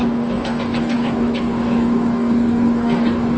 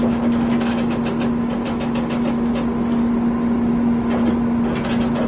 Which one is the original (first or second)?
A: second